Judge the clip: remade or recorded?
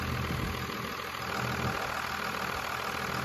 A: recorded